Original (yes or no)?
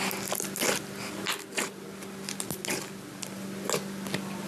yes